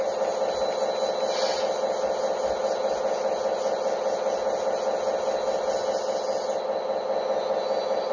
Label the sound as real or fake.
real